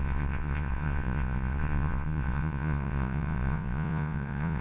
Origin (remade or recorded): remade